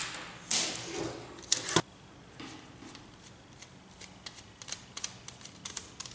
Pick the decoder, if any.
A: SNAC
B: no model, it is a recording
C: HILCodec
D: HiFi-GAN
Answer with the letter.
B